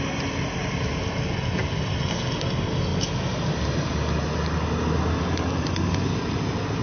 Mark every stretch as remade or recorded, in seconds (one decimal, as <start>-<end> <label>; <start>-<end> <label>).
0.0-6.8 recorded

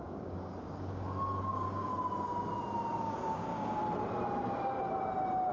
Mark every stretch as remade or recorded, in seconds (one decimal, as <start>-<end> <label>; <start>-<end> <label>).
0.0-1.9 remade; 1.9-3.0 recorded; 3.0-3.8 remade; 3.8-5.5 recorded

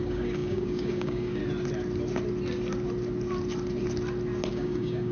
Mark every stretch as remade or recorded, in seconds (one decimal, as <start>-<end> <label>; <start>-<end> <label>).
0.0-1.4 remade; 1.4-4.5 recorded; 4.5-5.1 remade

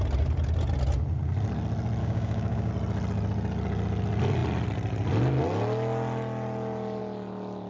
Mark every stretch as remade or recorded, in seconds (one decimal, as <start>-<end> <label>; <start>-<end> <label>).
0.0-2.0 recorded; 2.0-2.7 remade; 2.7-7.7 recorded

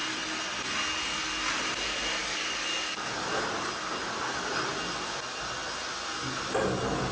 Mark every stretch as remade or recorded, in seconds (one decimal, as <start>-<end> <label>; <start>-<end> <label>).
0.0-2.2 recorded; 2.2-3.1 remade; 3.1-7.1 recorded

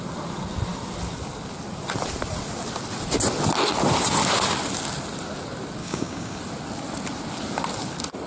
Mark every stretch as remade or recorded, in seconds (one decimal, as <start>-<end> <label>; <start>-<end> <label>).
0.0-5.8 recorded; 5.8-6.4 remade; 6.4-8.3 recorded